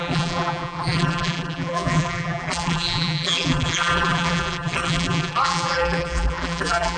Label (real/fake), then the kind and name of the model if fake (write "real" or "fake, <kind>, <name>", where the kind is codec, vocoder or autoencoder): fake, vocoder, BigVGAN v2